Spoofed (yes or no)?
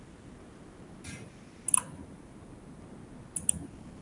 no